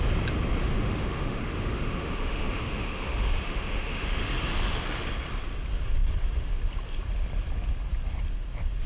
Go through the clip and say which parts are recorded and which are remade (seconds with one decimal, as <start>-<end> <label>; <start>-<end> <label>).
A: 0.0-0.6 recorded; 0.6-4.3 remade; 4.3-8.9 recorded